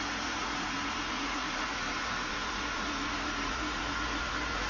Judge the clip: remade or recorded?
remade